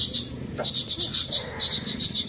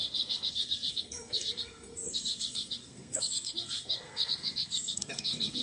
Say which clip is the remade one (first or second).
second